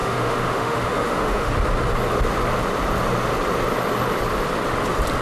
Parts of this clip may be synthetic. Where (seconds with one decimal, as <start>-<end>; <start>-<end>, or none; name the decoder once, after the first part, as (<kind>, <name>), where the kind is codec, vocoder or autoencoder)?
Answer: 0.0-1.5 (autoencoder, DAC-VAE)